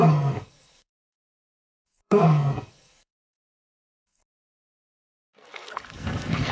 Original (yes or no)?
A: no